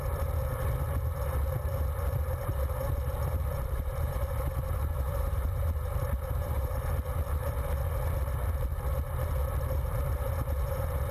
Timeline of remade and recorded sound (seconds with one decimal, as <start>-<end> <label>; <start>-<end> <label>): 0.0-3.5 recorded; 3.5-6.7 remade; 6.7-11.1 recorded